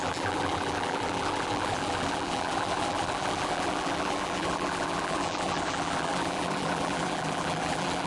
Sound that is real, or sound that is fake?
fake